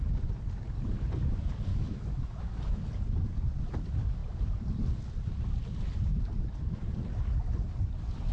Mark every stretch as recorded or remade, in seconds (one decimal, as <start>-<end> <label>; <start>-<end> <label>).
0.0-1.7 recorded; 1.7-2.8 remade; 2.8-8.3 recorded